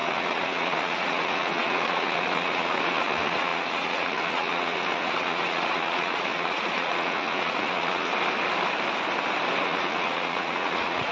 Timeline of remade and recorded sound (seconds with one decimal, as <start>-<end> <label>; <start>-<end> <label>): 0.0-8.1 remade; 8.1-9.6 recorded; 9.6-11.1 remade

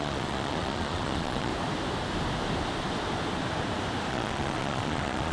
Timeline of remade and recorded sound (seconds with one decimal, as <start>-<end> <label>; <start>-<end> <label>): 0.0-1.5 remade; 1.5-4.1 recorded; 4.1-5.3 remade